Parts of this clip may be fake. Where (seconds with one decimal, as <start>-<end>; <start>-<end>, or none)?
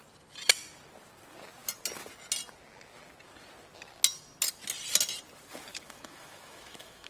5.7-7.1